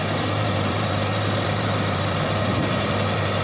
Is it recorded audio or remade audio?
remade